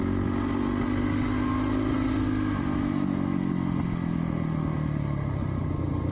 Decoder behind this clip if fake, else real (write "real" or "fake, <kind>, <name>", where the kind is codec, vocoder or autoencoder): real